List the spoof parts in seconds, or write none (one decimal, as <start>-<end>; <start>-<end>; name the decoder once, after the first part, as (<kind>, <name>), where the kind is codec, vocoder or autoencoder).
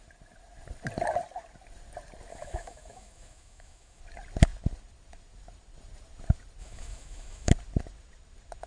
2.3-4.0 (autoencoder, DAC-VAE); 6.6-7.5